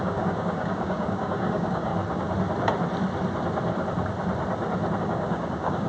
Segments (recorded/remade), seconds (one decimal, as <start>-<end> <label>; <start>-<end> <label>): 0.0-1.9 remade; 1.9-5.0 recorded; 5.0-5.9 remade